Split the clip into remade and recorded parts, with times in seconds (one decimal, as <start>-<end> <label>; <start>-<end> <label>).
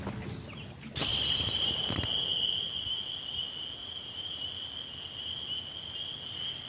0.0-1.1 recorded; 1.1-2.1 remade; 2.1-3.8 recorded; 3.8-4.5 remade; 4.5-6.7 recorded